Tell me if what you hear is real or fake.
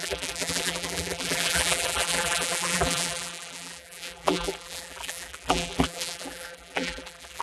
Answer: fake